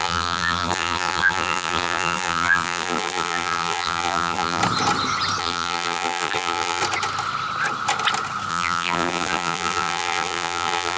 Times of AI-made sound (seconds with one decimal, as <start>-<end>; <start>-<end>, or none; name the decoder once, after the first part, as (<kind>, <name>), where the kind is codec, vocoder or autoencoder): 0.0-4.6 (vocoder, BigVGAN v2); 5.4-6.8; 8.5-11.0